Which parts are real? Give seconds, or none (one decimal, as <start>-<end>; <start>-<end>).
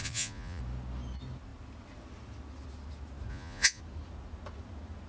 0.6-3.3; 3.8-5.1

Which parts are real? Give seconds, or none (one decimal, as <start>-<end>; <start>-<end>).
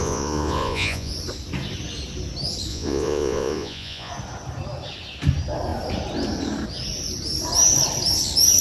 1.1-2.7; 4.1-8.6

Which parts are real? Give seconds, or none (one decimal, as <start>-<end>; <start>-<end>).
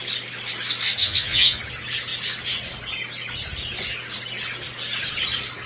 0.0-1.0; 1.6-5.7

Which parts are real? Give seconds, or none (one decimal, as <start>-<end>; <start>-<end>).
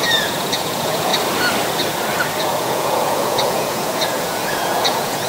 1.1-2.4